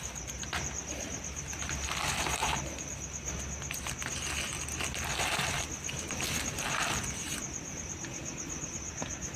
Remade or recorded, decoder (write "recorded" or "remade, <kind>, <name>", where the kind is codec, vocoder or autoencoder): recorded